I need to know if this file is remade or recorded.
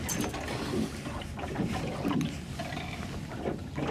recorded